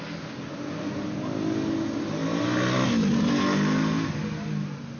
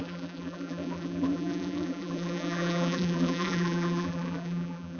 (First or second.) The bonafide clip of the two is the first